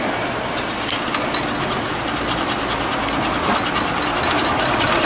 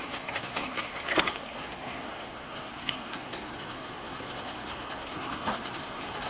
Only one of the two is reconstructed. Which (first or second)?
second